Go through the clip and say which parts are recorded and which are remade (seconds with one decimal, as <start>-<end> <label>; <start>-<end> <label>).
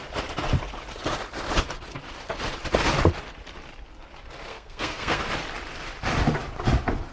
0.0-4.5 recorded; 4.5-5.2 remade; 5.2-7.1 recorded